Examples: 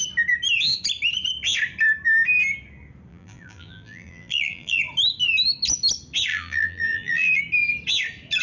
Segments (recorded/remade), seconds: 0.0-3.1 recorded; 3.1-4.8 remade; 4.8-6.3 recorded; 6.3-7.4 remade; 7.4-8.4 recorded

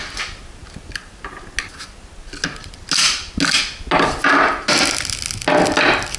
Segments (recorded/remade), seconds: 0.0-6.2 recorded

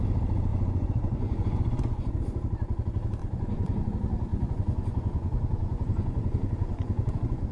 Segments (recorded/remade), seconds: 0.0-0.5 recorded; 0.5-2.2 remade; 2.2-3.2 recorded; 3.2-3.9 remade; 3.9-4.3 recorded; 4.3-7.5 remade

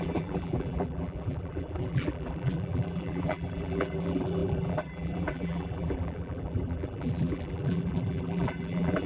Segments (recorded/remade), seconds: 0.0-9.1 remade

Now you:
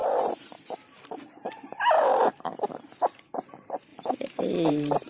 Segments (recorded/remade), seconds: 0.0-3.9 remade; 3.9-4.4 recorded; 4.4-5.1 remade

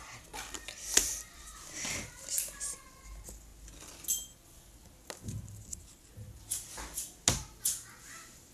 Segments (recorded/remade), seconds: 0.0-8.5 recorded

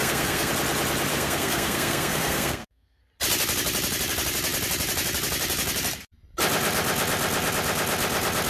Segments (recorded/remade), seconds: 0.0-0.5 remade; 0.5-1.1 recorded; 1.1-3.0 remade; 3.0-8.5 recorded

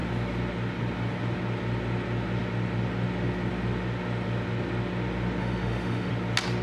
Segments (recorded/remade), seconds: 0.0-5.4 recorded; 5.4-6.1 remade; 6.1-6.6 recorded